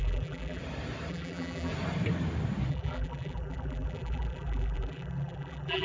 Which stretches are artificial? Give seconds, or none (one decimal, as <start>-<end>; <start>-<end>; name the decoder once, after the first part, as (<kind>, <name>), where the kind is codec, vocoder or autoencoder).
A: 0.0-0.6 (vocoder, BigVGAN v2); 1.1-1.7; 2.7-5.8